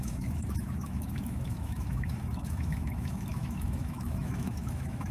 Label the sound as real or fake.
fake